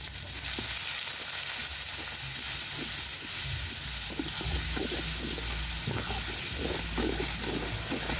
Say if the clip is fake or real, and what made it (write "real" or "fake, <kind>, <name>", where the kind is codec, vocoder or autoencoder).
real